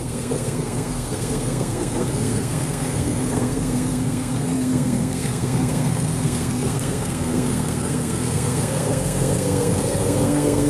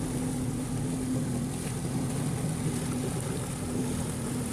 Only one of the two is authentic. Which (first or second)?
second